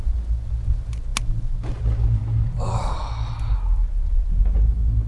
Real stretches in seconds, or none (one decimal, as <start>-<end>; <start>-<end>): 0.0-5.1